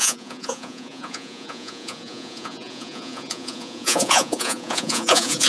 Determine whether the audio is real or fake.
fake